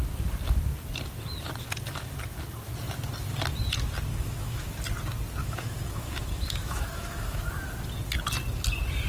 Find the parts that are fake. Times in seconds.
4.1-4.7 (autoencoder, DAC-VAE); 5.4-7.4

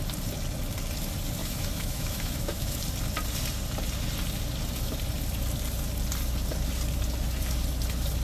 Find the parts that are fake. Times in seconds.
1.4-2.8 (autoencoder, DAC-VAE)

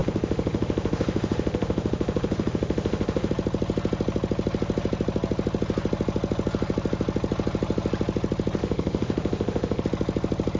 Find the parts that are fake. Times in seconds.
0.0-3.3 (autoencoder, DAC-VAE); 8.6-9.8

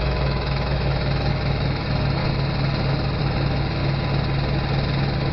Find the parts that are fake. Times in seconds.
0.0-2.2 (autoencoder, DAC-VAE); 3.2-3.8